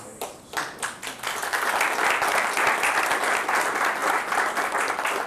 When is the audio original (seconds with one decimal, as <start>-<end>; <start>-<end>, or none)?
0.0-5.3

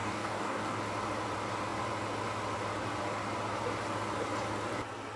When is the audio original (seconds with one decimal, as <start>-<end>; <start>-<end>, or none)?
0.8-5.2

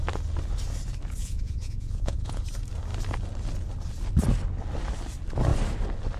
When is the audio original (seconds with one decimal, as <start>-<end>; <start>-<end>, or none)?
0.0-1.2; 2.4-6.2

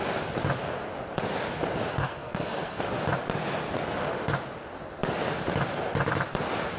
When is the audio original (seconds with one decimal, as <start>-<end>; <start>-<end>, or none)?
0.0-1.9; 2.8-6.8

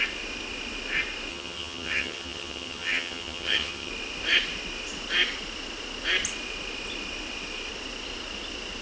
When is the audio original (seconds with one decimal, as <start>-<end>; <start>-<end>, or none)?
0.0-1.3; 3.9-8.8

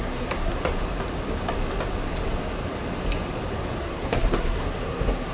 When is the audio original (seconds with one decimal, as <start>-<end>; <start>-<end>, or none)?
0.6-3.8